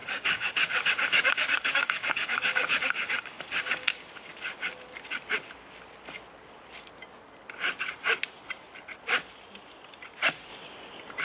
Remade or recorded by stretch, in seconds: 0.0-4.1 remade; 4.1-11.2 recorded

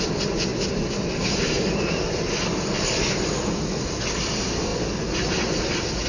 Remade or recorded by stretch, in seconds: 0.0-6.1 recorded

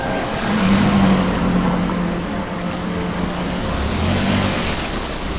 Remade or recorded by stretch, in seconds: 0.0-1.4 remade; 1.4-2.4 recorded; 2.4-5.4 remade

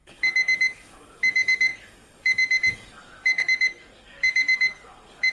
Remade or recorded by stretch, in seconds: 0.0-5.3 remade

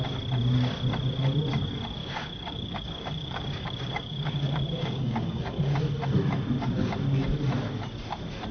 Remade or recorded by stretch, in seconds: 0.0-2.0 recorded; 2.0-5.8 remade; 5.8-8.5 recorded

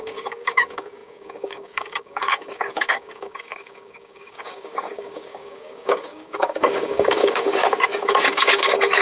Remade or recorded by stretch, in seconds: 0.0-9.0 remade